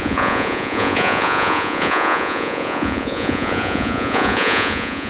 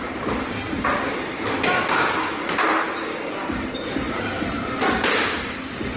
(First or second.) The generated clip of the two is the first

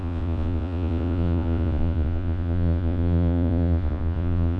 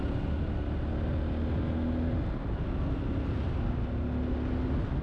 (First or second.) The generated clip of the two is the first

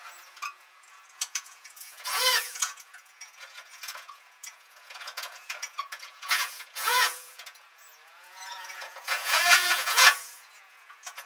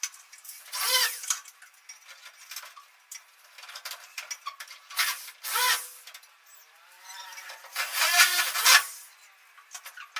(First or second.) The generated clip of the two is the first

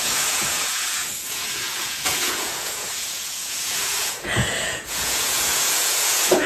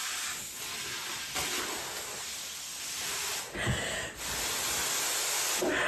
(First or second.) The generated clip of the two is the first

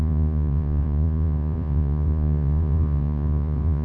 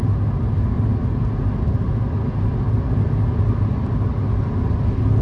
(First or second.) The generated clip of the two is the first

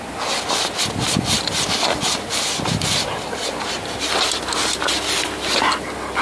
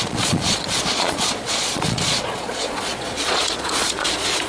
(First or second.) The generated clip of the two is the second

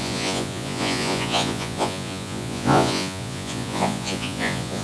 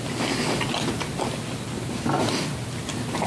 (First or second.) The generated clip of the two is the first